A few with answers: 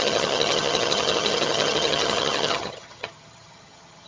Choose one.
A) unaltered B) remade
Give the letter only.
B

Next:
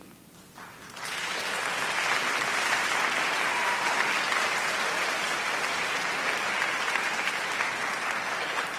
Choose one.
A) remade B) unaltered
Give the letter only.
B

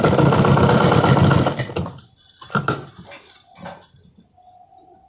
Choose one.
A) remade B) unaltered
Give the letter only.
B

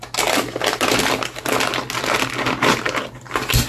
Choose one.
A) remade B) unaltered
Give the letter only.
B